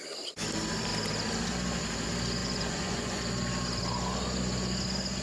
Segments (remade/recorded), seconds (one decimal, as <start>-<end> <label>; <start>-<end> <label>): 0.0-2.4 recorded; 2.4-3.2 remade; 3.2-5.2 recorded